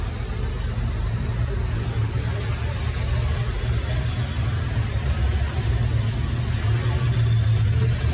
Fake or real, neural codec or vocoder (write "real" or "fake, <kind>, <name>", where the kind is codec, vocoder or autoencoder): real